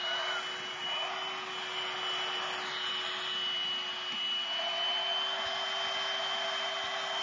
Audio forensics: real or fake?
real